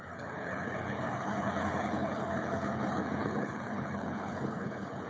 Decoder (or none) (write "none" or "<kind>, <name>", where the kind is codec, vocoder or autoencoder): codec, HILCodec